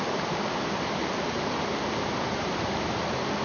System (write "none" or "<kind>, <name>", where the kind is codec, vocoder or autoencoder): none